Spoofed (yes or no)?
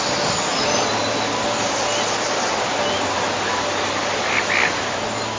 no